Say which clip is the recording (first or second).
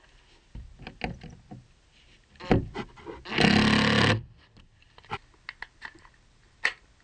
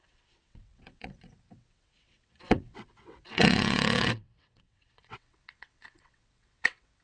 first